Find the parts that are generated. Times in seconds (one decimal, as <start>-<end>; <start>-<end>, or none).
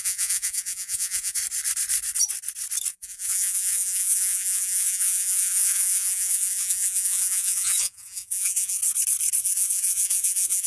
0.0-1.4; 2.9-8.8; 9.4-10.7